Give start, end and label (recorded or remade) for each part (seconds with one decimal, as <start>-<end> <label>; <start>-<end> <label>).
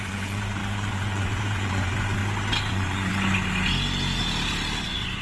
0.0-2.2 remade; 2.2-2.7 recorded; 2.7-3.1 remade; 3.1-4.8 recorded; 4.8-5.2 remade